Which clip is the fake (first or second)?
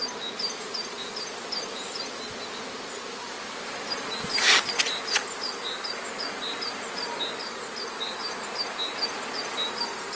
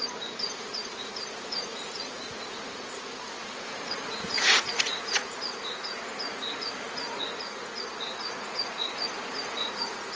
second